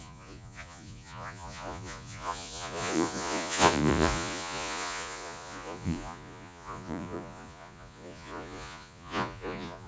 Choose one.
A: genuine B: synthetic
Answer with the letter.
B